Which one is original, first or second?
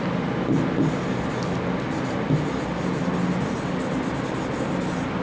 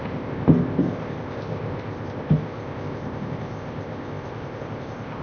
first